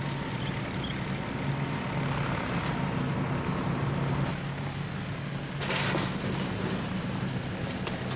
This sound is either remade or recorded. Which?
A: recorded